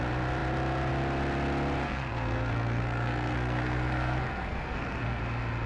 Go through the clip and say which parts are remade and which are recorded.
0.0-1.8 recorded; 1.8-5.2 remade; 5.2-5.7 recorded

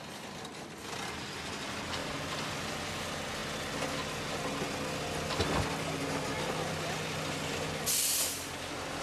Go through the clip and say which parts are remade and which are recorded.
0.0-9.0 recorded

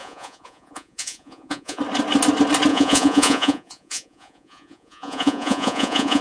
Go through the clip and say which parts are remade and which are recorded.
0.0-1.8 remade; 1.8-2.7 recorded; 2.7-6.2 remade

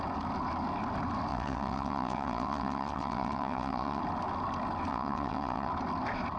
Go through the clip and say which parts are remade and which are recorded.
0.0-1.3 recorded; 1.3-4.0 remade; 4.0-4.9 recorded; 4.9-5.7 remade; 5.7-6.4 recorded

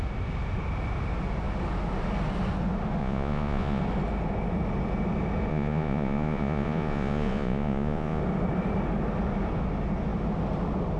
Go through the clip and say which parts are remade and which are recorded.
0.0-3.0 recorded; 3.0-3.8 remade; 3.8-5.5 recorded; 5.5-8.2 remade; 8.2-11.0 recorded

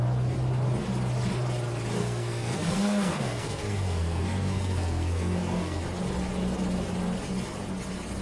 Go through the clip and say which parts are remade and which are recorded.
0.0-2.0 recorded; 2.0-5.8 remade; 5.8-8.2 recorded

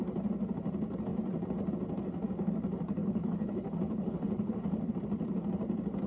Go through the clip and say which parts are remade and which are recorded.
0.0-3.0 recorded; 3.0-4.9 remade; 4.9-6.1 recorded